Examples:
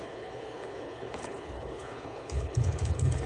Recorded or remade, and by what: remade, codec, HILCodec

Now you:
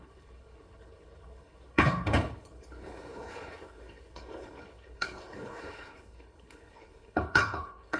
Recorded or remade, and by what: remade, codec, HILCodec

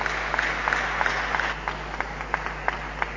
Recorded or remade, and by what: recorded